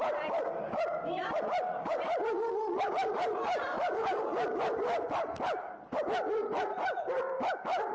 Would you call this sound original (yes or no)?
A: yes